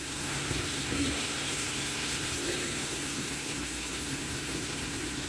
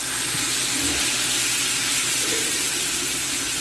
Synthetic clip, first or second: first